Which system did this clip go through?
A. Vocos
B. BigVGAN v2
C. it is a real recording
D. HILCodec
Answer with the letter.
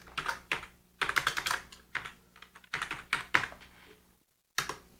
C